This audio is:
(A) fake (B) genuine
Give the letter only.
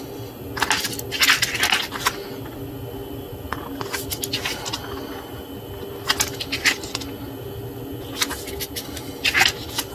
B